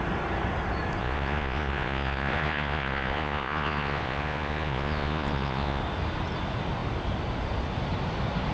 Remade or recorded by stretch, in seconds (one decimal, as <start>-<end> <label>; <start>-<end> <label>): 0.0-1.0 recorded; 1.0-5.8 remade; 5.8-8.5 recorded